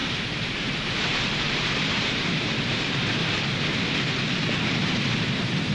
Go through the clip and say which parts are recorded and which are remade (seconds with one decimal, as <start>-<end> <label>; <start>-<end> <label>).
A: 0.0-3.2 remade; 3.2-4.6 recorded; 4.6-5.7 remade